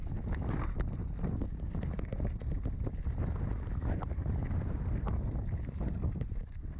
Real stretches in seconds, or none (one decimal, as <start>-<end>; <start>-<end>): 0.0-6.8